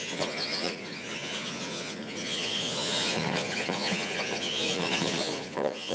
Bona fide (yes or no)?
no